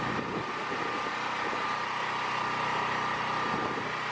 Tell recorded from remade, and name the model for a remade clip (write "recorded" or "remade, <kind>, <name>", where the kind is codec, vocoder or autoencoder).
recorded